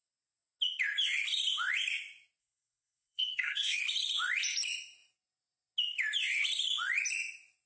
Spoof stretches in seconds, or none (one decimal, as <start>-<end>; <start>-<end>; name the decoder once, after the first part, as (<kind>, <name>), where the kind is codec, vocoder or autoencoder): 2.4-3.8 (codec, SNAC)